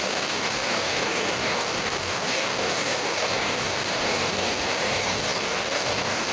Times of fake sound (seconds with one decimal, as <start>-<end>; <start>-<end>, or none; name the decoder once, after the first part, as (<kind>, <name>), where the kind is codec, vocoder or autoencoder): 0.0-6.3 (codec, DAC)